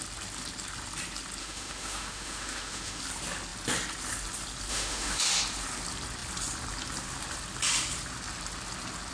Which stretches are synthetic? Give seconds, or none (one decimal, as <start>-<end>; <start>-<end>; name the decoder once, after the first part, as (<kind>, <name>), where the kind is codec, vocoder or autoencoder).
1.4-3.0 (autoencoder, DAC-VAE); 4.7-5.2